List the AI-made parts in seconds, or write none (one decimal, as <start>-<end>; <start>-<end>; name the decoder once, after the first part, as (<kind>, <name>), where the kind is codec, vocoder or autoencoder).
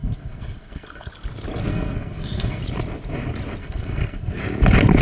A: 0.0-1.1 (codec, SNAC); 1.7-2.6; 3.6-4.4